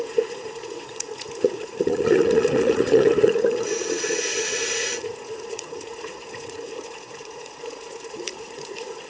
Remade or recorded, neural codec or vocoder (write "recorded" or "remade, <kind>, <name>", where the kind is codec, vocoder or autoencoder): remade, vocoder, Vocos